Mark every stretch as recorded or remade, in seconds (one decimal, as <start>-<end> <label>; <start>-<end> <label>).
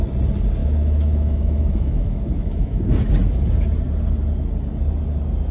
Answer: 0.0-0.6 recorded; 0.6-2.8 remade; 2.8-5.5 recorded